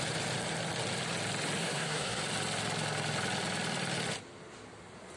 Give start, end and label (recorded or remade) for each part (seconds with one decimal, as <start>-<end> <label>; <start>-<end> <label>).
0.0-1.6 recorded; 1.6-2.2 remade; 2.2-5.2 recorded